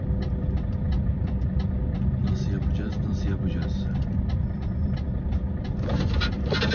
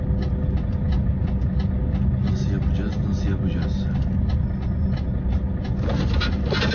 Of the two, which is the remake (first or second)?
first